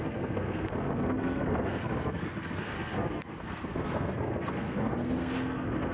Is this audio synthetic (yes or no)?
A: yes